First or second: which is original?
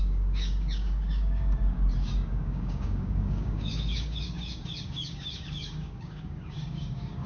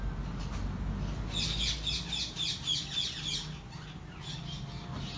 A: second